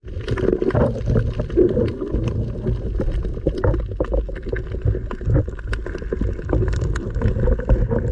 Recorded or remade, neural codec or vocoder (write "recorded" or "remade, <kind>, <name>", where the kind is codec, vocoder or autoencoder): recorded